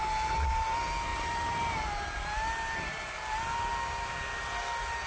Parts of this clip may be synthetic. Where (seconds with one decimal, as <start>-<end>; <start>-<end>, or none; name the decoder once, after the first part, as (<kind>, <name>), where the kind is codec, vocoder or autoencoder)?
none